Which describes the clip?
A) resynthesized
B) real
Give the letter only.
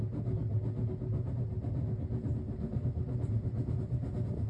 B